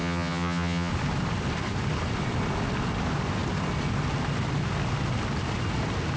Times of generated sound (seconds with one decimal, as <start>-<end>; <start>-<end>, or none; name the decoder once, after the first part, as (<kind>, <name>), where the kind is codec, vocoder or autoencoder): 0.0-0.9 (vocoder, HiFi-GAN)

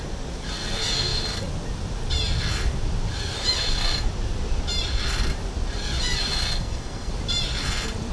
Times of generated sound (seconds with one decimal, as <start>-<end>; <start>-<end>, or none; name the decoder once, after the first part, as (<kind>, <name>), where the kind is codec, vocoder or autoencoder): 6.6-7.1 (codec, SNAC)

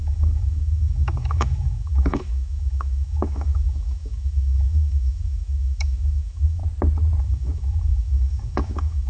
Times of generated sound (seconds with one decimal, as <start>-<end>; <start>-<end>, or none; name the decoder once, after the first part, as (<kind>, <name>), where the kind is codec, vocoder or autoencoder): 0.0-6.6 (autoencoder, DAC-VAE); 7.2-9.1